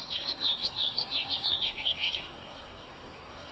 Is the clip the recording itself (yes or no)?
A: no